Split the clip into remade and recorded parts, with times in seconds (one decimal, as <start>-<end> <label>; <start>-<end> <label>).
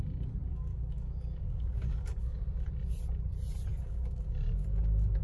0.0-0.5 recorded; 0.5-2.4 remade; 2.4-3.7 recorded; 3.7-5.2 remade